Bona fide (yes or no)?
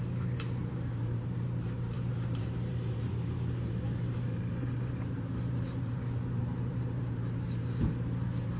no